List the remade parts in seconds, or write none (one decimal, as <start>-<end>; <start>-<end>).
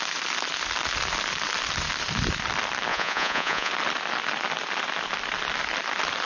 2.9-3.7